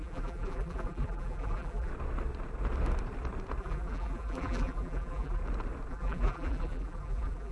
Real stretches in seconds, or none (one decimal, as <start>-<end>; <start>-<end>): 1.9-3.6; 5.4-5.9